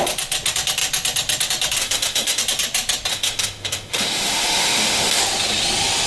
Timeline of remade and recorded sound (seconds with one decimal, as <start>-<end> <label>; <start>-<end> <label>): 0.0-1.8 recorded; 1.8-2.4 remade; 2.4-3.1 recorded; 3.1-5.2 remade; 5.2-6.1 recorded